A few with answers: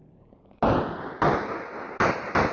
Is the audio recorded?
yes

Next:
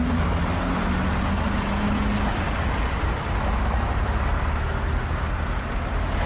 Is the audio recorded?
yes